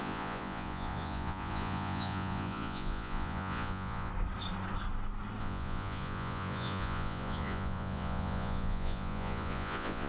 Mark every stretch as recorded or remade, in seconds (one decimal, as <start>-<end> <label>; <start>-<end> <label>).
0.0-4.1 remade; 4.1-5.4 recorded; 5.4-10.1 remade